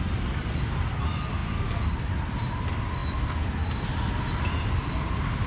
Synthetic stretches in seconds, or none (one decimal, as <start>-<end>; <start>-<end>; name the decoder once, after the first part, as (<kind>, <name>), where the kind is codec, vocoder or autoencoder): none